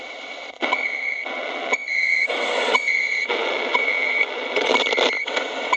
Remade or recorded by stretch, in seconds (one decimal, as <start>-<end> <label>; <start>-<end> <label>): 0.0-4.7 remade; 4.7-5.2 recorded; 5.2-5.8 remade